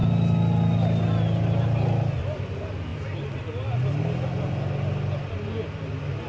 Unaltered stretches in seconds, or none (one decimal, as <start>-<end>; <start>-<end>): 0.0-6.3